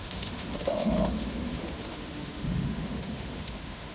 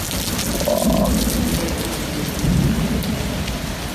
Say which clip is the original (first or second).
second